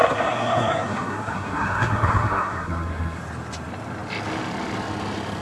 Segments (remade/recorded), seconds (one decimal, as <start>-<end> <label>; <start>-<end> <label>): 0.0-3.2 remade; 3.2-5.4 recorded